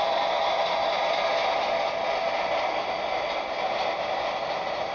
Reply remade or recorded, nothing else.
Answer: recorded